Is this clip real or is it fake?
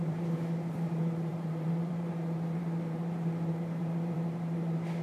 fake